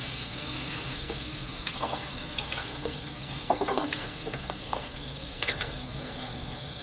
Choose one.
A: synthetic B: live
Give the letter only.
A